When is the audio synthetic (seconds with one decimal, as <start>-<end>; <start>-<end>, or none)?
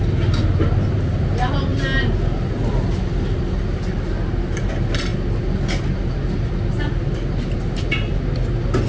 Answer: none